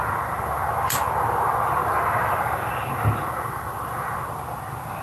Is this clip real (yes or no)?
yes